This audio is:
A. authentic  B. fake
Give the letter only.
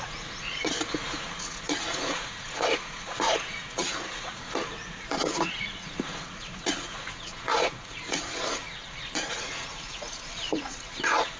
B